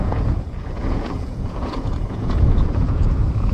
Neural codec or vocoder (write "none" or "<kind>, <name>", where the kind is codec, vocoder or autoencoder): vocoder, Vocos